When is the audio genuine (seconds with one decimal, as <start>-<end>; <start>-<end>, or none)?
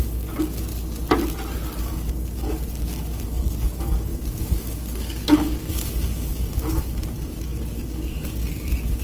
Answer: 0.7-1.8